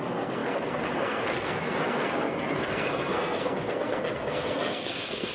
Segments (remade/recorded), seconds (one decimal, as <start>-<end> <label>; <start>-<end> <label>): 0.0-5.3 remade